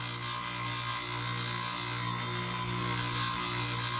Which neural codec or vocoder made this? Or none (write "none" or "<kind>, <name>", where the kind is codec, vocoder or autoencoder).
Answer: none